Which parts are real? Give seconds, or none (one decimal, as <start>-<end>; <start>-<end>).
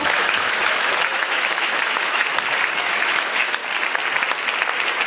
2.3-2.8; 3.6-5.1